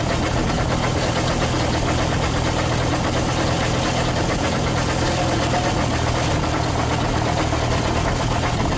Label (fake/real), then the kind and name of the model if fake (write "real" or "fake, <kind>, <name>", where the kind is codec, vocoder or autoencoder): real